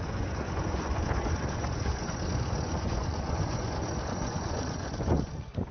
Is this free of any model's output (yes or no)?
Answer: no